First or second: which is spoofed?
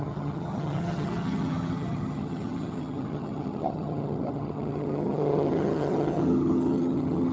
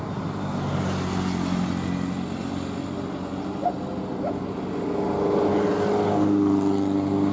first